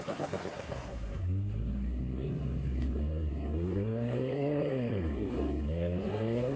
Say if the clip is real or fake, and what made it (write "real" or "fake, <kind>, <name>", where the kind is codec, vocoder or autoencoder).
fake, codec, SNAC